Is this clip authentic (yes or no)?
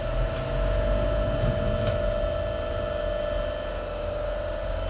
yes